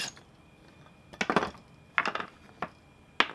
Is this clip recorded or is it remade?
recorded